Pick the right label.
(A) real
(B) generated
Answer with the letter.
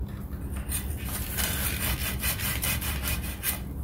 B